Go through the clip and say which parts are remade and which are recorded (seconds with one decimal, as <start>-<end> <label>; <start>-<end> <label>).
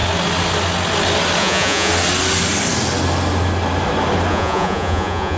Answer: 0.0-1.4 recorded; 1.4-1.9 remade; 1.9-4.3 recorded; 4.3-5.4 remade